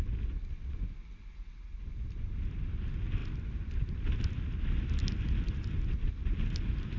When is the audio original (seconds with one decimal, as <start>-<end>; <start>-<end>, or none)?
0.0-7.0